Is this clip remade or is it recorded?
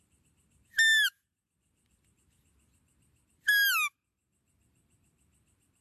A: recorded